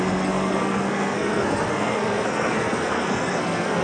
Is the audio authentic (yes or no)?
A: no